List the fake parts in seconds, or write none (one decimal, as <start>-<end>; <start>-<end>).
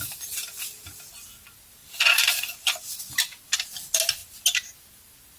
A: none